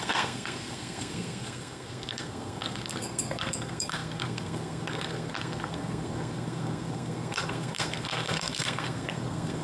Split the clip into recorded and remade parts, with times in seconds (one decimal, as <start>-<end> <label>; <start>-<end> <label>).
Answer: 0.0-9.6 remade